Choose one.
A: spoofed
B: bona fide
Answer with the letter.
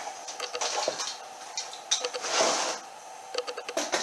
B